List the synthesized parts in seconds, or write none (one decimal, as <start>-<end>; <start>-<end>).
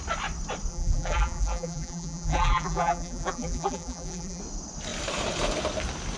0.7-4.4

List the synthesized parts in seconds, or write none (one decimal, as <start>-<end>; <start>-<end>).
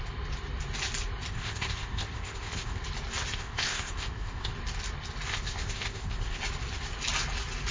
1.3-2.8; 3.3-4.5; 5.3-6.4